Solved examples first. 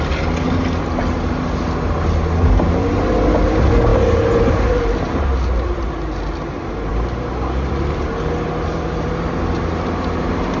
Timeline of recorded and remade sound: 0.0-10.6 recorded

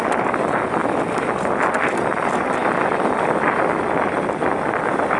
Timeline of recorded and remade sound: 0.0-5.2 recorded

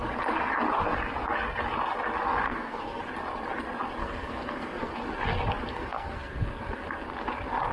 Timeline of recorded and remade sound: 0.0-2.4 recorded; 2.4-3.0 remade; 3.0-4.0 recorded; 4.0-4.9 remade; 4.9-5.7 recorded; 5.7-6.6 remade; 6.6-7.7 recorded

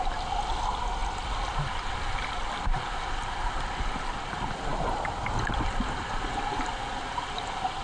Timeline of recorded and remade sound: 0.0-7.8 recorded